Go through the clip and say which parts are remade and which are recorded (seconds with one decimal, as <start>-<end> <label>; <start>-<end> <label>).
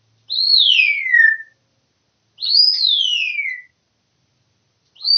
0.0-5.2 recorded